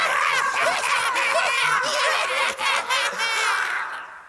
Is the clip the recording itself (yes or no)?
yes